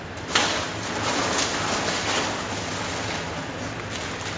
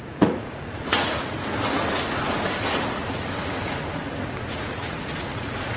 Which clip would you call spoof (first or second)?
second